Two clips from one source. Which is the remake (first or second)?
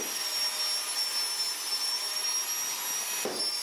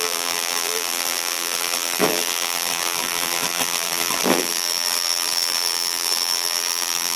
second